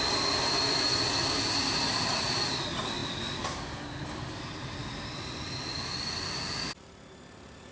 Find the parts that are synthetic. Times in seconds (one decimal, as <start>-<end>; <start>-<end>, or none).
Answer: none